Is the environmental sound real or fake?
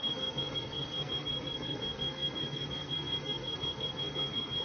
fake